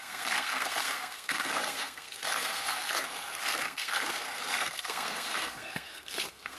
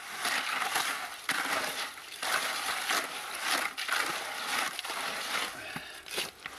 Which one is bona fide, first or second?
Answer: second